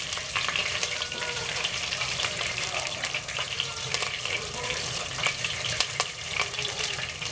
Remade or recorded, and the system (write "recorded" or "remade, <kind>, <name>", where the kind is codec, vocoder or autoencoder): remade, vocoder, BigVGAN v2